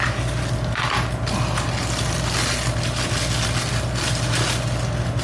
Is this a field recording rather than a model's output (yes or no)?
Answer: yes